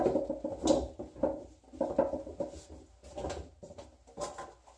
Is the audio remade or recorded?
recorded